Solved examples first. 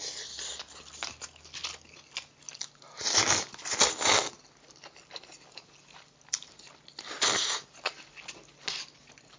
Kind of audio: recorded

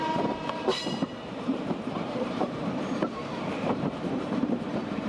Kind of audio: remade